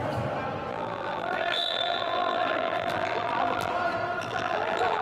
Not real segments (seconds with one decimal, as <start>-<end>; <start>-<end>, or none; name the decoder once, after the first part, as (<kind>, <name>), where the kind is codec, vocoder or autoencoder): 0.7-3.7 (vocoder, BigVGAN v2); 4.2-5.0